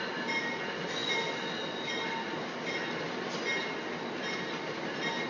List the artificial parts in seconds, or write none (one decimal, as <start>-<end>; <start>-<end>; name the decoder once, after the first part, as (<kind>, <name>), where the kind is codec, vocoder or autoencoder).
none